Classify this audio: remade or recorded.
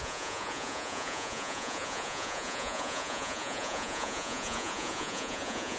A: remade